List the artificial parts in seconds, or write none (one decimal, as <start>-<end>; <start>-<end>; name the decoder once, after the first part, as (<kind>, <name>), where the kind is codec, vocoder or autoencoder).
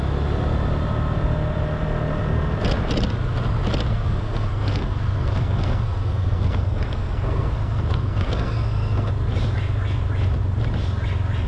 3.9-9.1 (codec, SNAC)